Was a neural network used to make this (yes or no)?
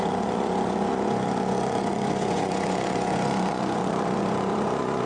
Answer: yes